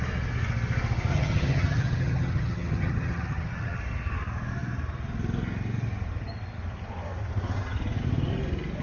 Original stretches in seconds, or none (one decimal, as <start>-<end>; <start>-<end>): 0.0-1.1; 3.8-8.8